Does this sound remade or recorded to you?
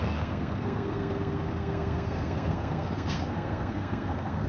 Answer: remade